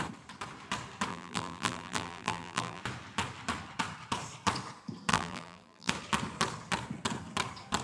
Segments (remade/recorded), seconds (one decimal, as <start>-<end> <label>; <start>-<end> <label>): 0.0-1.1 recorded; 1.1-2.8 remade; 2.8-5.1 recorded; 5.1-5.9 remade; 5.9-7.8 recorded